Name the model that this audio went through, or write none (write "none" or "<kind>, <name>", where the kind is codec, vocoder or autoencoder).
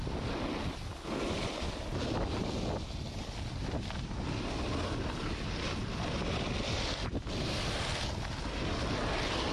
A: none